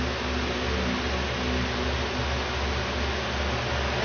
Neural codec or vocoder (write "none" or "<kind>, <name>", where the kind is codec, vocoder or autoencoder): none